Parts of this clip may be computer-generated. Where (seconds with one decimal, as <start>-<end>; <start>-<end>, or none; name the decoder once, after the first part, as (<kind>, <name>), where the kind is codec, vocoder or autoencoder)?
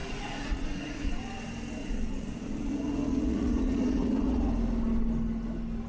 0.0-1.1 (vocoder, Vocos); 1.8-4.5